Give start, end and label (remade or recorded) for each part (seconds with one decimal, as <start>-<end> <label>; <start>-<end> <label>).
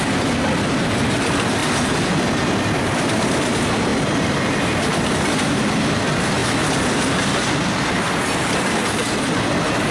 0.0-1.6 recorded; 1.6-2.6 remade; 2.6-3.9 recorded; 3.9-5.6 remade; 5.6-9.9 recorded